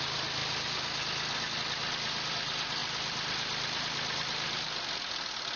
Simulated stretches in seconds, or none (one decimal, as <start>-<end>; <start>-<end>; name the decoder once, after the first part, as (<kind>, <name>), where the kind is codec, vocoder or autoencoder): none

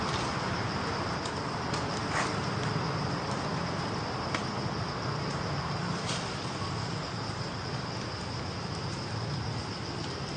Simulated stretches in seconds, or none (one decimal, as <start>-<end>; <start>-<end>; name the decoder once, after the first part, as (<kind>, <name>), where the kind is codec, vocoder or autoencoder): none

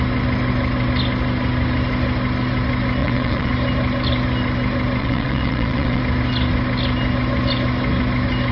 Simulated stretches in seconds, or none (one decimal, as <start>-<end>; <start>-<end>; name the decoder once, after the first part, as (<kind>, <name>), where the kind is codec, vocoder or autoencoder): 3.0-3.5 (vocoder, WaveNeXt); 5.0-6.0

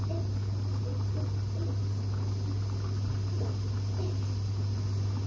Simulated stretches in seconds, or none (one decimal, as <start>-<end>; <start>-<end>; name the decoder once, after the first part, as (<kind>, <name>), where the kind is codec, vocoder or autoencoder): none

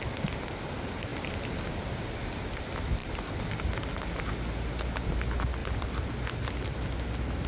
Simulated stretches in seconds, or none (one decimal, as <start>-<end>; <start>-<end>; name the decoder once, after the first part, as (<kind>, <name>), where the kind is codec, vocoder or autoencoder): none

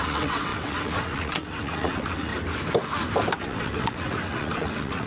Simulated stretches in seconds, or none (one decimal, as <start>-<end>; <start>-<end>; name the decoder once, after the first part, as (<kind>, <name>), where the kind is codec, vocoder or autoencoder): 0.0-2.3 (vocoder, WaveNeXt); 3.4-5.1

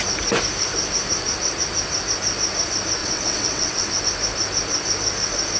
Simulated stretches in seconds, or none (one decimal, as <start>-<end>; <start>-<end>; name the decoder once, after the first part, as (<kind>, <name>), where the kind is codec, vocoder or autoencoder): 3.0-4.0 (vocoder, WaveNeXt)